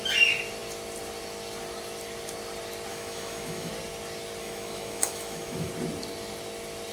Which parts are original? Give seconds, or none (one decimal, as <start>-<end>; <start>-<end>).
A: 0.0-2.9; 3.7-4.4; 5.7-6.9